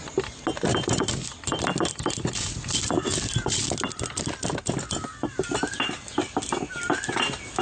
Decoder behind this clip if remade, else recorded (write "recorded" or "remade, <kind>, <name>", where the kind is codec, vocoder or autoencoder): recorded